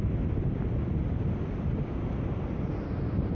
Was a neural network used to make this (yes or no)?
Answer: no